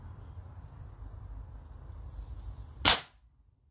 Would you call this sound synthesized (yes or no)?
no